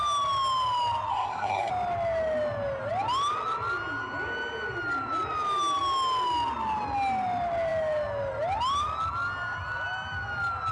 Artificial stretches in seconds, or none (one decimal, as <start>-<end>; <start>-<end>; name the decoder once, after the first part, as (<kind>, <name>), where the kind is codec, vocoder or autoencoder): 1.1-1.7 (codec, SNAC)